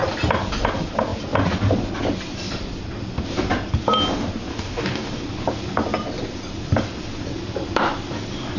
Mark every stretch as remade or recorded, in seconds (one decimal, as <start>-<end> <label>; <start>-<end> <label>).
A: 0.0-4.5 recorded; 4.5-5.1 remade; 5.1-8.6 recorded